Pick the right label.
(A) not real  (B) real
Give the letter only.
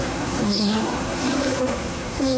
A